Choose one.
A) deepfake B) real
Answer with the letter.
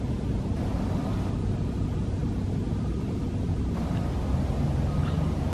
B